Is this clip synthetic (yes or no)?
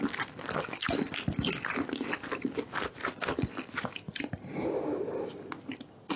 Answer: no